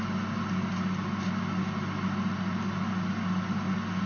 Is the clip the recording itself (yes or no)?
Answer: yes